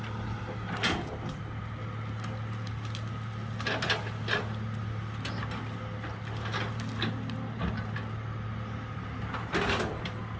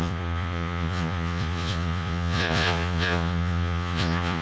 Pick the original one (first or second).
first